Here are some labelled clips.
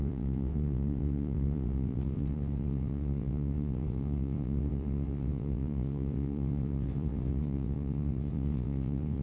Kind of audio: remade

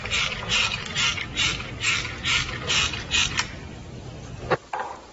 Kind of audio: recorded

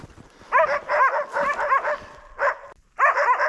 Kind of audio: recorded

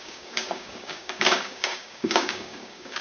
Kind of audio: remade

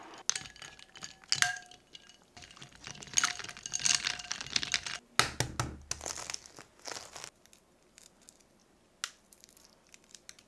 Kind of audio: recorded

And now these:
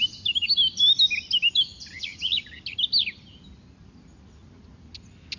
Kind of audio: recorded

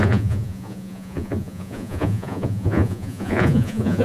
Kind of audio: remade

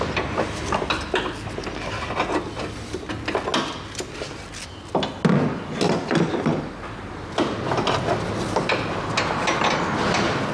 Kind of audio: recorded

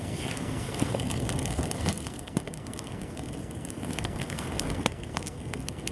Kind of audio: remade